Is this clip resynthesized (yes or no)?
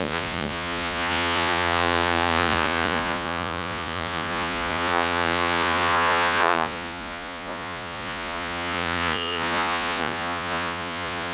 yes